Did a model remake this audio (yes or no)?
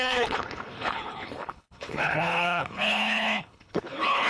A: yes